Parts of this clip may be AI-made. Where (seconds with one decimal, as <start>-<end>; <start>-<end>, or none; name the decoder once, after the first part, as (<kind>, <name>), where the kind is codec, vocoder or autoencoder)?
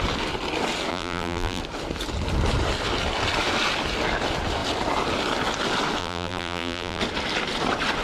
0.9-1.6 (vocoder, BigVGAN v2); 6.0-7.0